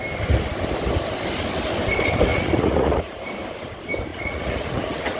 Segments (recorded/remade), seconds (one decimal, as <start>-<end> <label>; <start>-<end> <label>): 0.0-2.3 recorded; 2.3-3.2 remade; 3.2-4.1 recorded; 4.1-5.2 remade